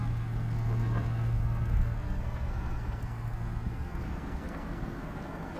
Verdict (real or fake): fake